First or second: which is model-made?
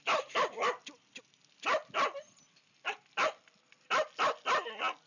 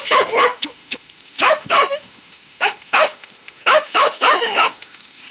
second